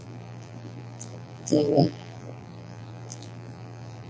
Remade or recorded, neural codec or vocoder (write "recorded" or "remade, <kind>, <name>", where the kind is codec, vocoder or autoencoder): remade, vocoder, BigVGAN v2